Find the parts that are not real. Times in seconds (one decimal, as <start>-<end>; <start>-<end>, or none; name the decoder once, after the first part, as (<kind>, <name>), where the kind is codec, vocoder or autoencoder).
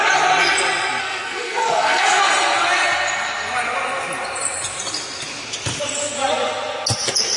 1.0-2.2 (codec, SNAC)